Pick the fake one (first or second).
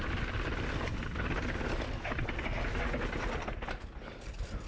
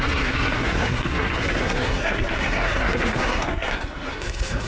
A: second